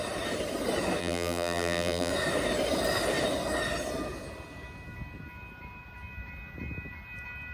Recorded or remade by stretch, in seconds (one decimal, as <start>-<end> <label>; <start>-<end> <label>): 0.0-1.0 recorded; 1.0-2.1 remade; 2.1-7.5 recorded